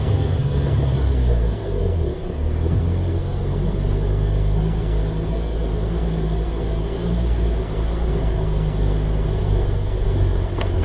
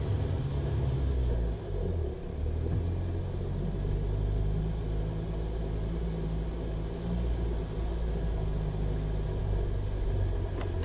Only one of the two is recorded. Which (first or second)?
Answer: second